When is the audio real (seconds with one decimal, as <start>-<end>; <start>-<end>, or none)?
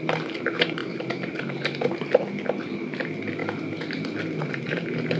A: 0.0-5.2